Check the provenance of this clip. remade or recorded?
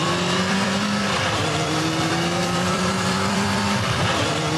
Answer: remade